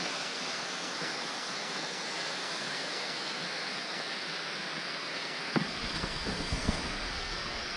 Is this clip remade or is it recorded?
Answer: remade